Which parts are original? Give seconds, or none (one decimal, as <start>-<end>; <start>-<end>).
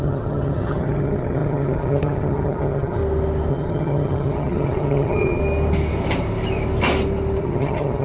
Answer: 3.0-3.5; 5.4-7.4